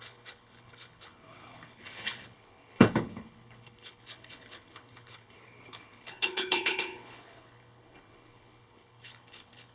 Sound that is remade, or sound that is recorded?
remade